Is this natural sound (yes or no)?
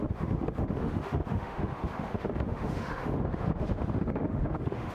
no